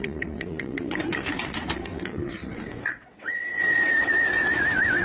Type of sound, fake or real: fake